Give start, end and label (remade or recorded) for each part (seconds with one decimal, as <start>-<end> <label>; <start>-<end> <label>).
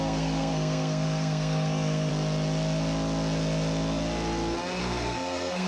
0.0-2.1 remade; 2.1-4.8 recorded; 4.8-5.7 remade